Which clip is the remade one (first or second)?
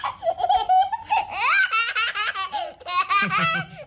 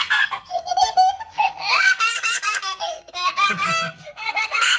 second